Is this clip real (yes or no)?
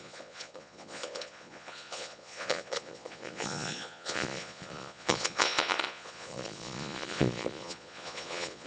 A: no